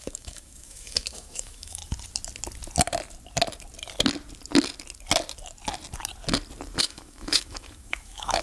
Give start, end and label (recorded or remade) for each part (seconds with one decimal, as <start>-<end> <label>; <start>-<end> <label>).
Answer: 0.0-1.8 remade; 1.8-6.8 recorded; 6.8-8.4 remade